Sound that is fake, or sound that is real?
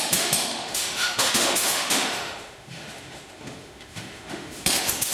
fake